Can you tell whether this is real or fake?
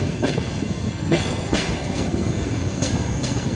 fake